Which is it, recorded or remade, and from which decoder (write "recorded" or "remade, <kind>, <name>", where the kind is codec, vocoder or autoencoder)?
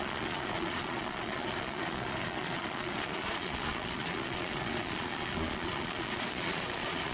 remade, vocoder, Vocos